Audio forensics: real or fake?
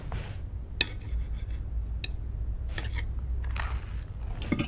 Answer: real